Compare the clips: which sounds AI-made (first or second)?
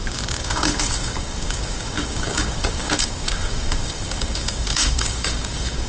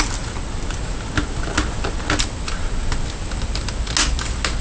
first